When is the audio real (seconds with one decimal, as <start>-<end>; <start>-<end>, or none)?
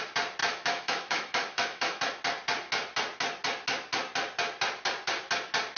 0.0-0.4; 2.0-5.8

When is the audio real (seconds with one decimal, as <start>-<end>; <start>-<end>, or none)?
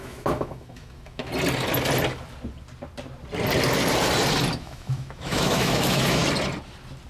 1.3-4.6; 6.2-7.1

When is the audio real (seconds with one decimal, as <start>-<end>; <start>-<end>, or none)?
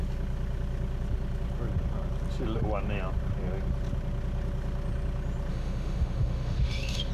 0.0-5.5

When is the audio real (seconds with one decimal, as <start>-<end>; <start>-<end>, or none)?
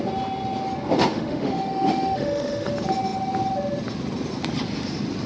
0.0-1.1; 2.7-5.3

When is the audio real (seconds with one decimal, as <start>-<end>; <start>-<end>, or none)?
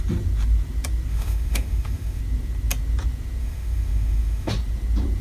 0.0-1.1; 2.2-3.4; 4.5-5.2